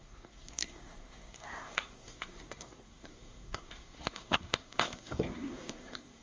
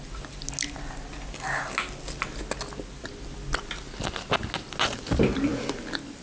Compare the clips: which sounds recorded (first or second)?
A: second